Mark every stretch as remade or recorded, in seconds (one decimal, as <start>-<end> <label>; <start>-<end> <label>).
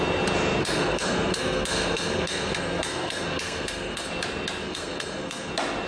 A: 0.0-0.6 recorded; 0.6-4.1 remade; 4.1-4.6 recorded; 4.6-5.5 remade; 5.5-5.9 recorded